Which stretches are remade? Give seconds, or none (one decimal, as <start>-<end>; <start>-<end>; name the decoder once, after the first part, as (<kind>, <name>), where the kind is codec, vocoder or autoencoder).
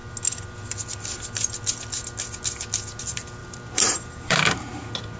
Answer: 3.4-4.7 (vocoder, BigVGAN v2)